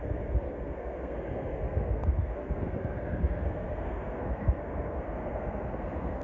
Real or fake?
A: fake